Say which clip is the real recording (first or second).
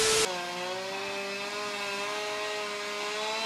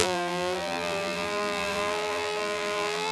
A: first